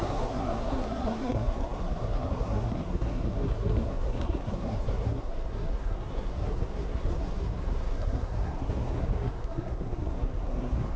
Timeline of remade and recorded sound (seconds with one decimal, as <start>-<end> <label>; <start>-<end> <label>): 0.0-11.0 remade